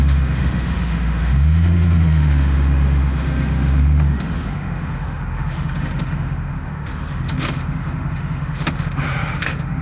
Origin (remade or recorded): remade